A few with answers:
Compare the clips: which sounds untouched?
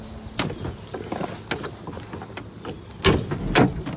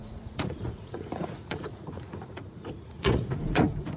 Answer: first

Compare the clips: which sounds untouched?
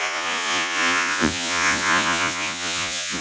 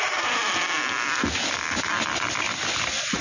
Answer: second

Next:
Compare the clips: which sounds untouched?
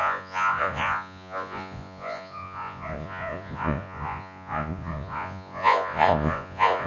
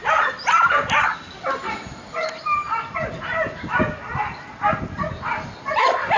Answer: second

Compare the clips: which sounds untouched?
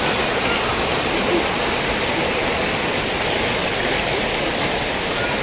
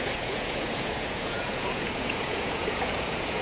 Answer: first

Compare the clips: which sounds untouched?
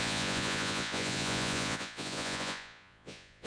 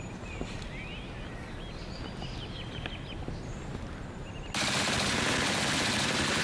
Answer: second